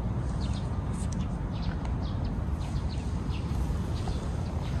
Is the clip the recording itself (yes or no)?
yes